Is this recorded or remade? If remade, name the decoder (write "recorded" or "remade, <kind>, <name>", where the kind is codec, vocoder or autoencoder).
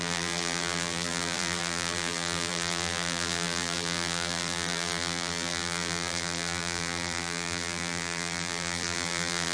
remade, vocoder, BigVGAN v2